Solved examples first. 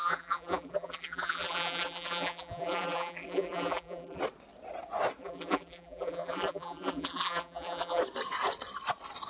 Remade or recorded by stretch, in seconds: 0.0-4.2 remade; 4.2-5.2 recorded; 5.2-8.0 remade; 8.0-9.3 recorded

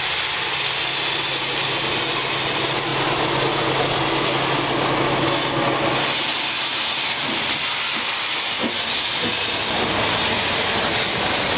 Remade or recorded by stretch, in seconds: 0.0-11.6 recorded

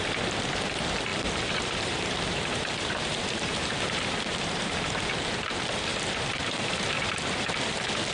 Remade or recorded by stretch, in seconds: 0.0-1.1 recorded; 1.1-5.0 remade; 5.0-5.9 recorded; 5.9-7.0 remade; 7.0-8.1 recorded

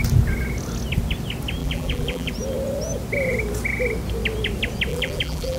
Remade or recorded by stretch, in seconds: 0.0-1.6 recorded; 1.6-2.3 remade; 2.3-4.9 recorded; 4.9-5.6 remade

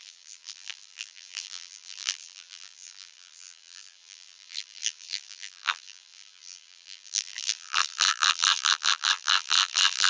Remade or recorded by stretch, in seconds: 0.0-10.1 remade

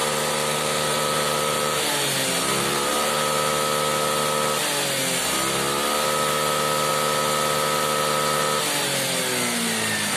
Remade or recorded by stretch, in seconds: 0.0-3.2 remade; 3.2-10.2 recorded

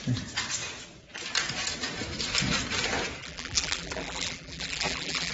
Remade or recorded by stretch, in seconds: 0.0-3.2 recorded; 3.2-5.3 remade

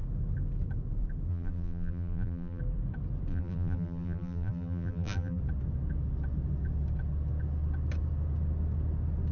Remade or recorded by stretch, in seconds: 0.0-1.3 recorded; 1.3-2.6 remade; 2.6-3.3 recorded; 3.3-5.4 remade; 5.4-9.3 recorded